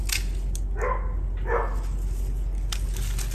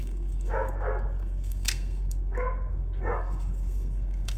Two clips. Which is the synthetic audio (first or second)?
second